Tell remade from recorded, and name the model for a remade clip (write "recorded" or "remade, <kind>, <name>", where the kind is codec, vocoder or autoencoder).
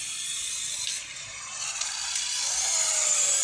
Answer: recorded